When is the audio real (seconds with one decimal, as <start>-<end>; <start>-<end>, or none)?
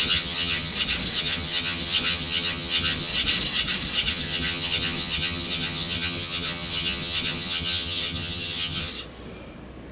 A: 0.7-1.2; 3.1-4.1; 8.9-9.9